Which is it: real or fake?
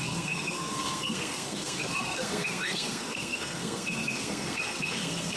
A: fake